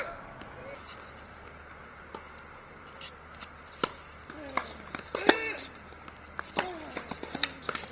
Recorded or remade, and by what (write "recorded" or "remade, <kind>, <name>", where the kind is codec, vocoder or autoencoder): recorded